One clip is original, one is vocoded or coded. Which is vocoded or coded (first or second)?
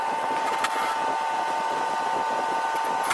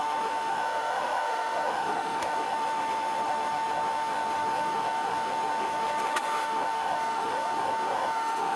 second